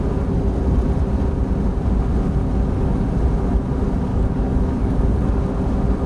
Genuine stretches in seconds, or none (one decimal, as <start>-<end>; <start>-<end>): 0.0-4.1; 5.4-6.1